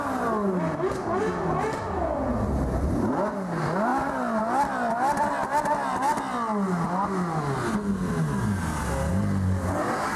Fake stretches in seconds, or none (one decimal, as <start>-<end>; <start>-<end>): none